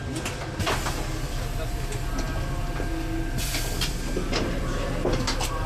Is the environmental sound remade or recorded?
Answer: recorded